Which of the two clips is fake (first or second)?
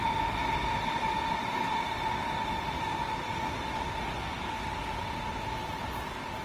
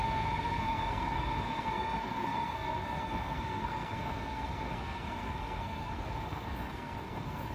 second